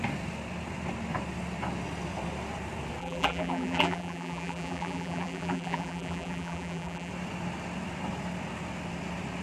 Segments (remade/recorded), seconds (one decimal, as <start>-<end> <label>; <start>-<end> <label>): 0.0-3.0 recorded; 3.0-7.1 remade; 7.1-9.4 recorded

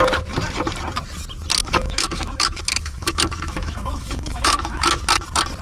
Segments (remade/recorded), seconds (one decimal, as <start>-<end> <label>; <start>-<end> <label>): 0.0-1.6 recorded; 1.6-5.0 remade; 5.0-5.6 recorded

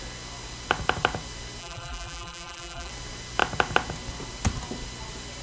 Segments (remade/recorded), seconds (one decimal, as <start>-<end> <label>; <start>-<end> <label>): 0.0-1.6 recorded; 1.6-2.9 remade; 2.9-5.4 recorded

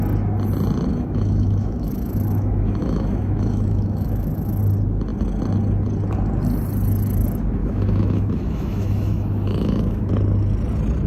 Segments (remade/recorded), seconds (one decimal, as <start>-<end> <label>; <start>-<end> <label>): 0.0-0.9 recorded; 0.9-4.6 remade; 4.6-7.6 recorded; 7.6-10.1 remade; 10.1-11.1 recorded

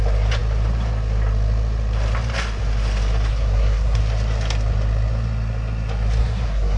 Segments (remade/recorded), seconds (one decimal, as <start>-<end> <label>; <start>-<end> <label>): 0.0-3.3 recorded; 3.3-4.0 remade; 4.0-6.2 recorded; 6.2-6.8 remade

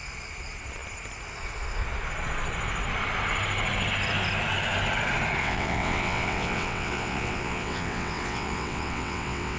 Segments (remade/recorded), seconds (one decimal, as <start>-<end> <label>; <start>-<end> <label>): 0.0-5.4 recorded; 5.4-9.6 remade

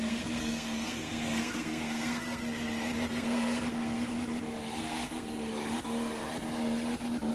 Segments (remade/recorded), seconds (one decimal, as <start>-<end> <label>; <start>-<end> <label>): 0.0-2.4 remade; 2.4-3.1 recorded; 3.1-4.1 remade; 4.1-4.8 recorded; 4.8-5.5 remade; 5.5-7.3 recorded